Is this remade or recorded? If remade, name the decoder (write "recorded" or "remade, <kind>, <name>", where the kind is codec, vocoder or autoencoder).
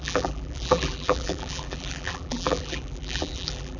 remade, vocoder, BigVGAN v2